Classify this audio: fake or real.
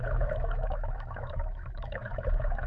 fake